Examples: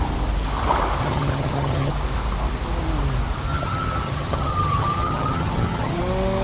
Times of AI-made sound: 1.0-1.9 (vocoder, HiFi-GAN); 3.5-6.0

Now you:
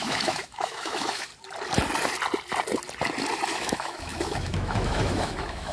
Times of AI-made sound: 0.0-1.3 (autoencoder, DAC-VAE); 3.5-5.7

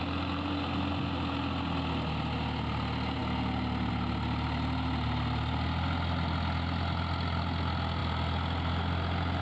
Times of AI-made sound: none

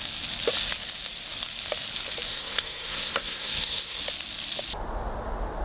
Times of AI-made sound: 2.3-4.0 (codec, SNAC)